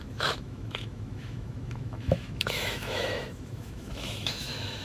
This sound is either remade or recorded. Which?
remade